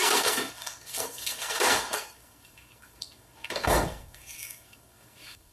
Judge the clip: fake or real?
fake